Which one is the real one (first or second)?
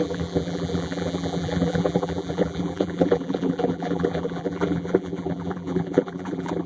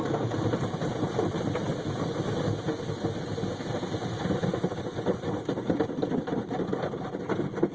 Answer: second